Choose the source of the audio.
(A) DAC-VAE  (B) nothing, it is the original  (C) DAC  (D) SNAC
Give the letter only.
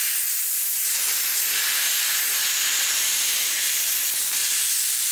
B